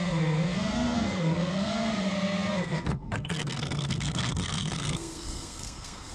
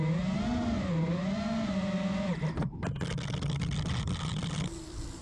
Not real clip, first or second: first